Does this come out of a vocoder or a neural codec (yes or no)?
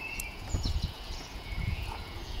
yes